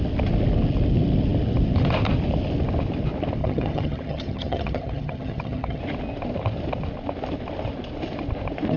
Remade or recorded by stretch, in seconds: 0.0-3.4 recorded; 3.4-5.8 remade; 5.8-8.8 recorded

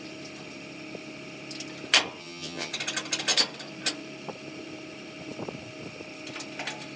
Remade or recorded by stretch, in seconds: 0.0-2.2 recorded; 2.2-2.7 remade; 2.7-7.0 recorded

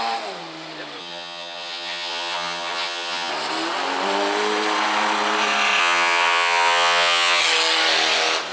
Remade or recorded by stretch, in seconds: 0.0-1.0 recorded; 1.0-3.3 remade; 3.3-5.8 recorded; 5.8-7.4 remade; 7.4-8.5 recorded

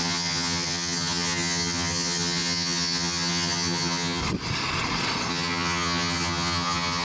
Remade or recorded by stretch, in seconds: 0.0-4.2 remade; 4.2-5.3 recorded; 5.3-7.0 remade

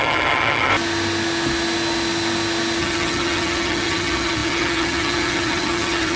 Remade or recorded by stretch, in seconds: 0.0-0.7 remade; 0.7-2.8 recorded; 2.8-6.2 remade